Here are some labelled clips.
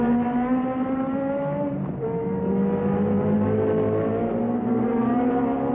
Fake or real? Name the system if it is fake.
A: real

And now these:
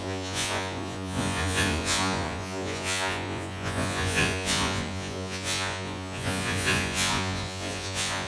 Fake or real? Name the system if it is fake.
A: fake, vocoder, Vocos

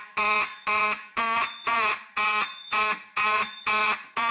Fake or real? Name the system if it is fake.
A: fake, vocoder, Vocos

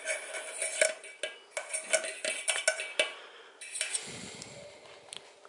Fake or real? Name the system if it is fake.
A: real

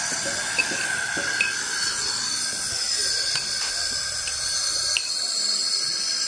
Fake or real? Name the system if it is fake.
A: real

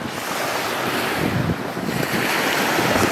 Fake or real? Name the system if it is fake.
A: real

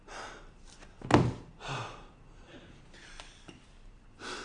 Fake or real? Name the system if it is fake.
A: real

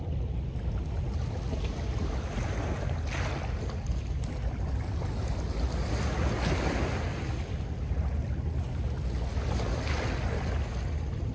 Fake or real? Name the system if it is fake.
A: real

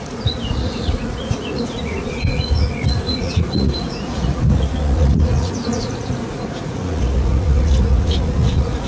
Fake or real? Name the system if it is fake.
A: fake, vocoder, Vocos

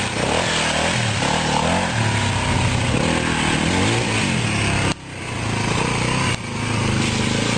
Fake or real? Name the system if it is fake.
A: real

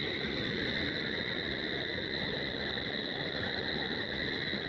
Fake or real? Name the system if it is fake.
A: fake, vocoder, Vocos